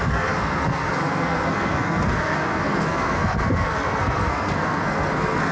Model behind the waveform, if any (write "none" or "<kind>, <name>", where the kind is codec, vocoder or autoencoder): codec, SNAC